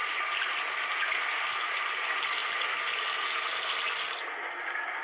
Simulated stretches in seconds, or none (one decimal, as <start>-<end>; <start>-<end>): none